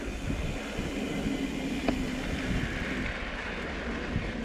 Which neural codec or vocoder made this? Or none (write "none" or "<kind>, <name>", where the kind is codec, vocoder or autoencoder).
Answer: none